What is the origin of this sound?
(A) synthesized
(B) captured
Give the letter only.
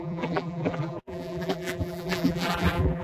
A